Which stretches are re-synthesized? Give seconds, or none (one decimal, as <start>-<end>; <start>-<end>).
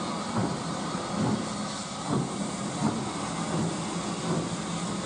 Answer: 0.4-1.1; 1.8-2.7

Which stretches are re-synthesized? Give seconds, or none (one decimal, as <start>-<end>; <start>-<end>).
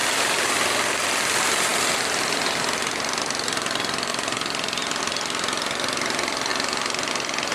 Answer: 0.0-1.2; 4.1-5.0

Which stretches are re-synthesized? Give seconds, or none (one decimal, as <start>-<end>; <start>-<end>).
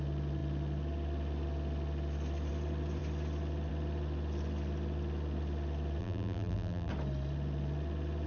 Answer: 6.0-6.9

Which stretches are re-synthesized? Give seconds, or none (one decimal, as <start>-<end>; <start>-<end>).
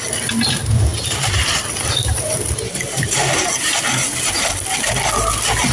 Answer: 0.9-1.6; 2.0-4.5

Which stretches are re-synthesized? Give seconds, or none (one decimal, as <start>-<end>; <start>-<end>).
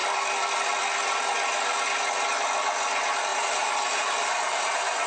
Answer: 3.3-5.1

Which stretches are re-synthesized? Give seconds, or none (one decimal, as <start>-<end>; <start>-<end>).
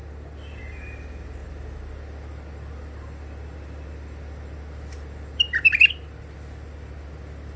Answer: none